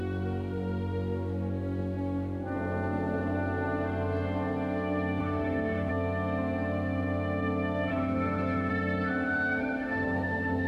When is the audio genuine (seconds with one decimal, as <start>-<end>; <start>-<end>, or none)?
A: 0.0-5.2; 5.9-7.9; 8.7-9.6